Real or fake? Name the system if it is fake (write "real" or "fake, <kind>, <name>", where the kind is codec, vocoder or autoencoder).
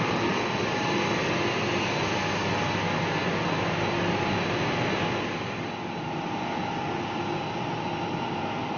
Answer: real